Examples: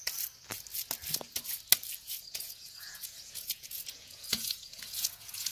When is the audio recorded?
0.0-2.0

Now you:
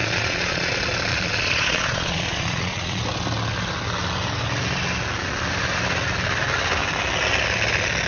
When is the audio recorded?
0.7-1.1; 3.0-8.1

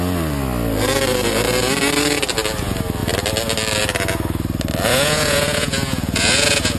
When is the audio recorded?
0.0-4.9

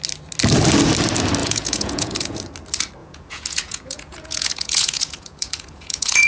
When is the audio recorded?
0.0-1.4; 2.4-3.0

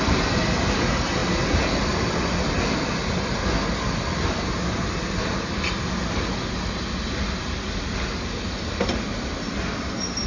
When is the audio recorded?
0.0-10.3